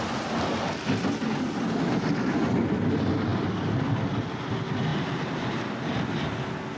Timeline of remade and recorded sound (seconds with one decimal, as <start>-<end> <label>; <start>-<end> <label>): 0.0-3.3 recorded; 3.3-4.0 remade; 4.0-4.9 recorded; 4.9-5.9 remade; 5.9-6.8 recorded